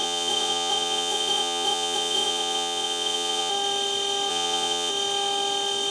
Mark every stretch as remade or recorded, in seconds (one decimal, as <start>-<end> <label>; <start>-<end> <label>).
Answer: 0.0-3.5 remade; 3.5-4.3 recorded; 4.3-4.9 remade; 4.9-5.9 recorded